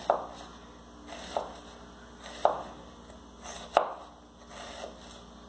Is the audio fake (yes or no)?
no